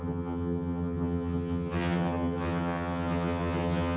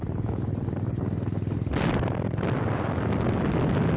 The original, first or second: second